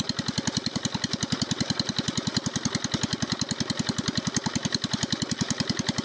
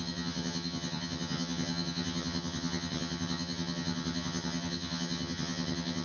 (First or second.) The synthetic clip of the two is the second